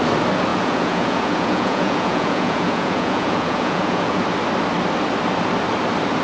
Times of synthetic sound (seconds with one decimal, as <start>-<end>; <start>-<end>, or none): 0.5-4.2